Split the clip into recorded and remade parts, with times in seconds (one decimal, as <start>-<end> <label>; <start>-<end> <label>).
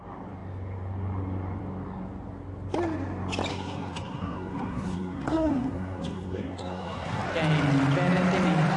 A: 0.0-3.5 recorded; 3.5-7.2 remade; 7.2-8.8 recorded